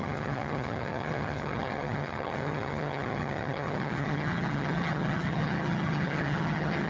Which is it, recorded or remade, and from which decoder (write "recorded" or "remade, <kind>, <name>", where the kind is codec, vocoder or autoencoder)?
remade, vocoder, HiFi-GAN